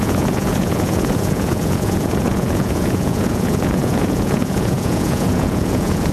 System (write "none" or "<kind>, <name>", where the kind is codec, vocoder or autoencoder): vocoder, Vocos